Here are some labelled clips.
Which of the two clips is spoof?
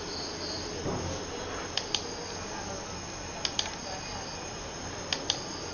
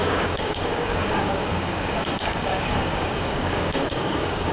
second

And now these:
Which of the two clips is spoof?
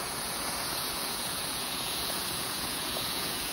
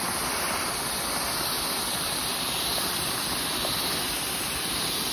first